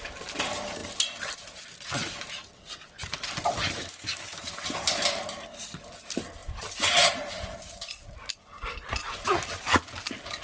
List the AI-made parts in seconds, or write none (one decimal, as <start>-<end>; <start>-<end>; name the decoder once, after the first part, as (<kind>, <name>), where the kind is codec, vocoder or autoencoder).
3.8-4.5 (autoencoder, DAC-VAE)